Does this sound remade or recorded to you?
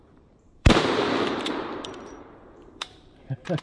remade